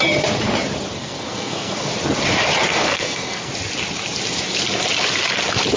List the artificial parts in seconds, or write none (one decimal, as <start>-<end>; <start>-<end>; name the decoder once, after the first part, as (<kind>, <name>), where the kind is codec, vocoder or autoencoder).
1.0-1.9 (codec, SNAC); 2.7-3.5